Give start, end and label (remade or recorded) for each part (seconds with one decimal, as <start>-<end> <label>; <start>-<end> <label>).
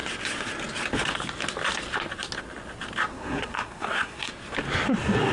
0.0-3.1 recorded; 3.1-4.3 remade; 4.3-5.3 recorded